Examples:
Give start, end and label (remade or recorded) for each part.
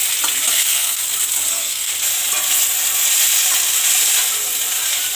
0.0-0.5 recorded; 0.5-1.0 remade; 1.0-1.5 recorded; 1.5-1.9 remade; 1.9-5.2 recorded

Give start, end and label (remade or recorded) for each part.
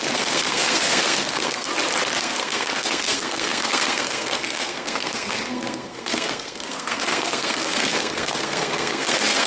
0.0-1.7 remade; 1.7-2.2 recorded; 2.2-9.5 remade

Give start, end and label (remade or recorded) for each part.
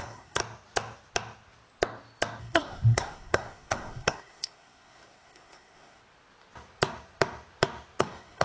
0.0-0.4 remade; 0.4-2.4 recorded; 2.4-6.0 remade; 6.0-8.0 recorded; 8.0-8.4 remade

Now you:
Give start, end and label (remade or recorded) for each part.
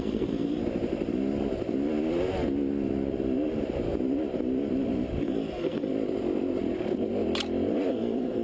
0.0-0.6 remade; 0.6-5.2 recorded; 5.2-5.9 remade; 5.9-7.9 recorded; 7.9-8.4 remade